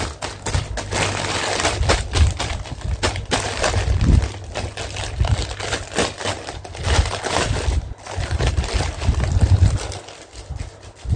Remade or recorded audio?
recorded